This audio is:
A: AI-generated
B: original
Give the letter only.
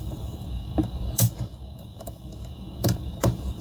A